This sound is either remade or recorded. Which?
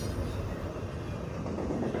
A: recorded